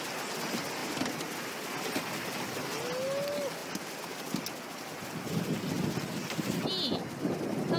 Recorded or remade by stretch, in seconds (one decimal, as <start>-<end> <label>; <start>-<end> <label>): 0.0-7.8 recorded